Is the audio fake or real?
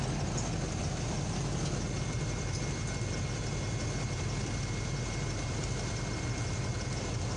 real